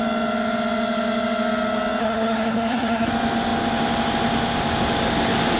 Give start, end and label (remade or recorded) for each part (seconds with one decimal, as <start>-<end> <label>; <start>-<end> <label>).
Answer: 0.0-2.0 recorded; 2.0-3.1 remade; 3.1-5.6 recorded